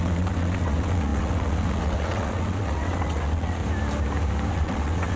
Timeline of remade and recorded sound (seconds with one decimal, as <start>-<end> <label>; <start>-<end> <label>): 0.0-3.6 remade; 3.6-4.5 recorded; 4.5-5.2 remade